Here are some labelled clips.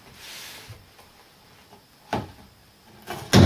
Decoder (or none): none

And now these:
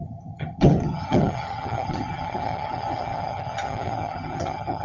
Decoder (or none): vocoder, HiFi-GAN